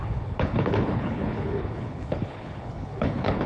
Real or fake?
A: fake